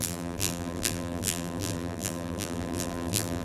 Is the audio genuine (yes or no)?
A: no